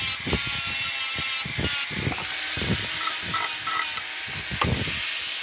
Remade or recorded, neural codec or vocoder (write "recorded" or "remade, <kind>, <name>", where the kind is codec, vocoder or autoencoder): recorded